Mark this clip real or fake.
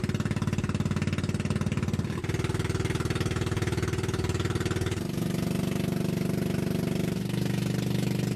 real